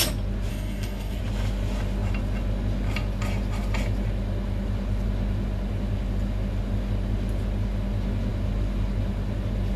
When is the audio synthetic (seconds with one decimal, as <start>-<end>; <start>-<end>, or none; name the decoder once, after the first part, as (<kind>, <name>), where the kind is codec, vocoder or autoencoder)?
0.5-1.2 (codec, SNAC)